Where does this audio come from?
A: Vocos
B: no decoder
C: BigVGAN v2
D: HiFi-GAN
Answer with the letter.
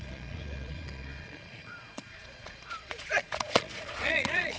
A